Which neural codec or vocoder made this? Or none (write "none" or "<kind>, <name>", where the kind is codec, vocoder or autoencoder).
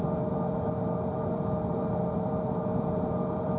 vocoder, BigVGAN v2